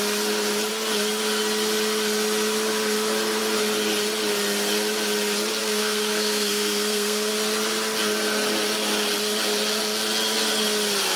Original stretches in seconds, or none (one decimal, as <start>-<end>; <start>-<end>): 0.0-5.6; 7.3-11.2